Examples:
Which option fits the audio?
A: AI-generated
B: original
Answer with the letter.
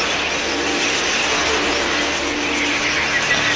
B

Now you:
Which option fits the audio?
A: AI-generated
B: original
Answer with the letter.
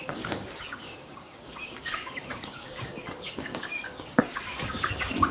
A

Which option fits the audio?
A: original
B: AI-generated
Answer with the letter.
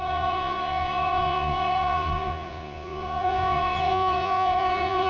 B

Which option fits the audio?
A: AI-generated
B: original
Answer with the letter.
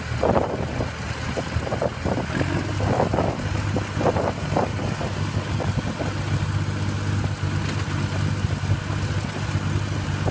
B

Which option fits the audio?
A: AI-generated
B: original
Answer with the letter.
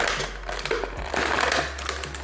B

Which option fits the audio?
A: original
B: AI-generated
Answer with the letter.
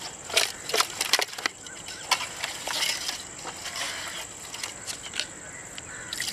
A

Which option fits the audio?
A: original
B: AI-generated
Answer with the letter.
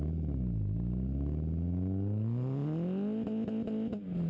A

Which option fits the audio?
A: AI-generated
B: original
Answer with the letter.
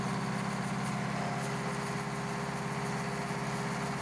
B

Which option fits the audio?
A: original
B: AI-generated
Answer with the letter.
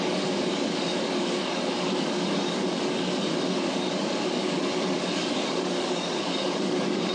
B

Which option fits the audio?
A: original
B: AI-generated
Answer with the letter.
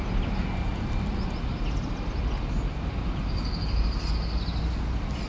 A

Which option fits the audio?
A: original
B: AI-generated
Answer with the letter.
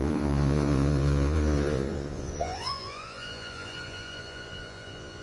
B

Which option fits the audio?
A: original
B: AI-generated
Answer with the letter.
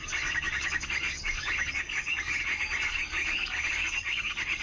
B